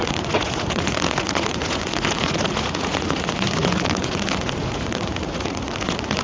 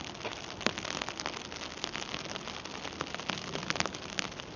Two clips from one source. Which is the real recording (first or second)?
second